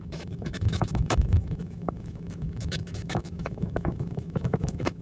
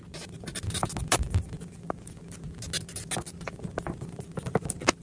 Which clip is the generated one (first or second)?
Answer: first